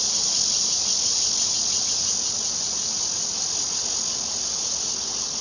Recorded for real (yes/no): yes